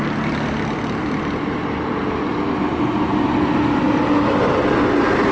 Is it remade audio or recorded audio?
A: recorded